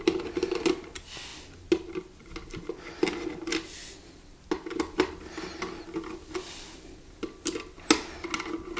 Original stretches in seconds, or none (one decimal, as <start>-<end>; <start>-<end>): 0.0-8.8